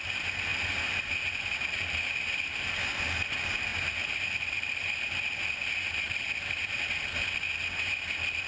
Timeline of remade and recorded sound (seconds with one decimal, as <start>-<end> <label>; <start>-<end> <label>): 0.0-0.5 recorded; 0.5-1.1 remade; 1.1-3.7 recorded; 3.7-5.2 remade; 5.2-8.5 recorded